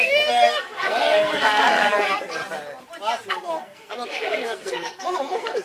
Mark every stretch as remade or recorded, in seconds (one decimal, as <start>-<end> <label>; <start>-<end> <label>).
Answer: 0.0-2.4 remade; 2.4-3.3 recorded; 3.3-5.6 remade